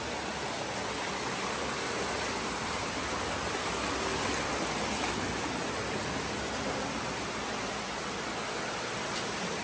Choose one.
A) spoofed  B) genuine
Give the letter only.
B